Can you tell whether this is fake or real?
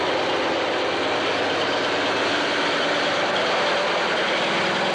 real